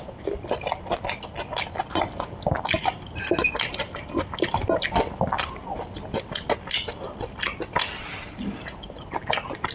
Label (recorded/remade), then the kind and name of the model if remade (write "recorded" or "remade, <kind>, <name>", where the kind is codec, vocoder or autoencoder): recorded